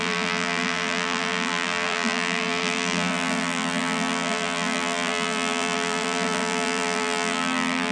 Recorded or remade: remade